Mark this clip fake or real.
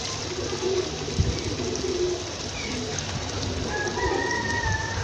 real